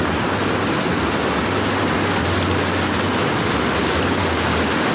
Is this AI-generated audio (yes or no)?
no